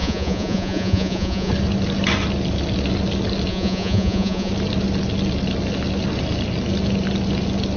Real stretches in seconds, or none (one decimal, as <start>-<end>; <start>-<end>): 1.5-3.5; 4.5-7.8

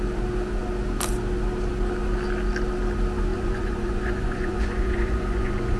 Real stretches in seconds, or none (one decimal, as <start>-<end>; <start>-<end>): 0.0-3.3

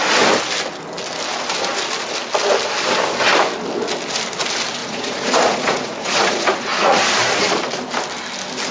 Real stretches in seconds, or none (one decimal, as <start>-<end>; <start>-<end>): 0.0-4.8; 7.0-8.7

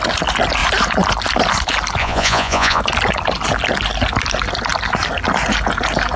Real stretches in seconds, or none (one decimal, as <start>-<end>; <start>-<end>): 0.0-2.0; 2.8-6.2